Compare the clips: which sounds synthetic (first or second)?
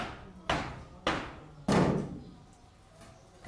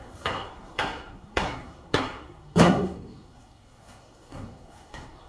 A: second